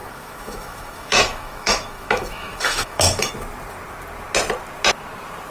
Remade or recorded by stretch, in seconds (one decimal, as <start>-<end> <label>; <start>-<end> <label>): 0.0-3.3 remade; 3.3-5.5 recorded